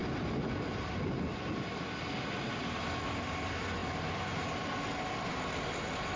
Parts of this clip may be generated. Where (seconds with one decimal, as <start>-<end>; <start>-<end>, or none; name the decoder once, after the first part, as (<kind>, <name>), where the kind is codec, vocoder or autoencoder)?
none